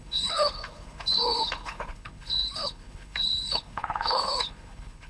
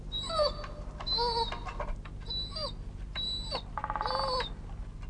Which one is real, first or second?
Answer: second